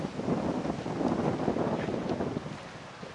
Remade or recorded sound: recorded